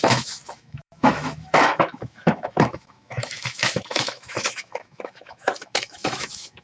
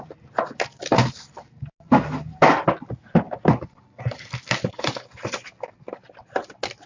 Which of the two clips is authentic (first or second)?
second